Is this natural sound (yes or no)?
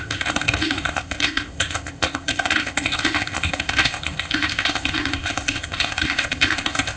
no